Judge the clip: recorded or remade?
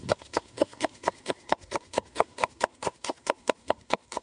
remade